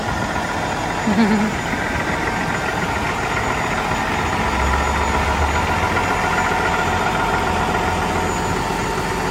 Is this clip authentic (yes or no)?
yes